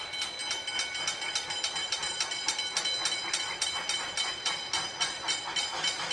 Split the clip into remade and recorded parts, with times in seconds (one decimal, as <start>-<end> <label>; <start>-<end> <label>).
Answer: 0.0-6.1 recorded

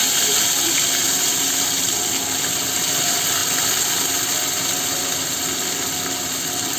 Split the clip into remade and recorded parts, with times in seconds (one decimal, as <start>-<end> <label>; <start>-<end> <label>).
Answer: 0.0-1.0 recorded; 1.0-6.8 remade

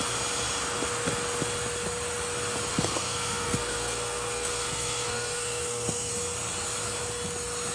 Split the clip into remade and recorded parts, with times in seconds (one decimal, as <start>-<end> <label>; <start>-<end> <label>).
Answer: 0.0-2.7 recorded; 2.7-6.1 remade; 6.1-7.7 recorded

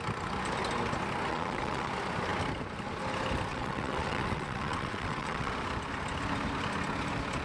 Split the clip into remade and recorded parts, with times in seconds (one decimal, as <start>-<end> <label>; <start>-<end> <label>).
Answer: 0.0-1.3 recorded; 1.3-1.9 remade; 1.9-3.5 recorded; 3.5-5.5 remade; 5.5-7.4 recorded

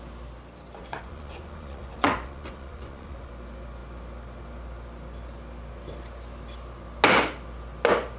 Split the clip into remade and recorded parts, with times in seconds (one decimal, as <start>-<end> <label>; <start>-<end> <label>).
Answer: 0.0-0.8 recorded; 0.8-3.3 remade; 3.3-8.2 recorded

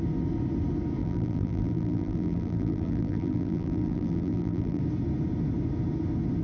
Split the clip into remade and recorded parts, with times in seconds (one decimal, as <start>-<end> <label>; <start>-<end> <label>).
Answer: 0.0-1.0 recorded; 1.0-4.8 remade; 4.8-6.4 recorded

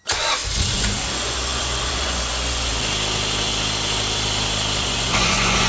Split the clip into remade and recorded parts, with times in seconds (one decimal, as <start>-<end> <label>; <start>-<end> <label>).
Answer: 0.0-2.7 remade; 2.7-4.8 recorded; 4.8-5.7 remade